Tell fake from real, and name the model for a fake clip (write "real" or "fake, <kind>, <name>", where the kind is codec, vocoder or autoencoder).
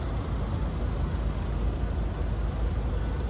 real